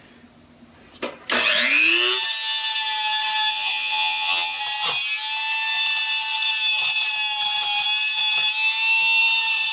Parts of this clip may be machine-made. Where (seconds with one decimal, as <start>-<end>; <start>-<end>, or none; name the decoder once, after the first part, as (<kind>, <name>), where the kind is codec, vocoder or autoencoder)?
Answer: 3.5-4.6 (vocoder, HiFi-GAN)